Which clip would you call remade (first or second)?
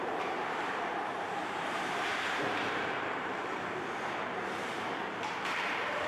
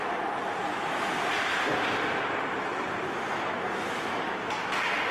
first